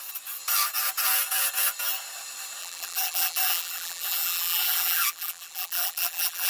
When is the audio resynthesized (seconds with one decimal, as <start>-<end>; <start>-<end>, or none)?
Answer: 2.6-6.5